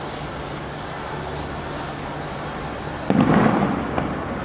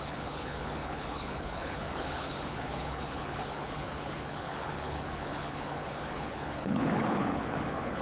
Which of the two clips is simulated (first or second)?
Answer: second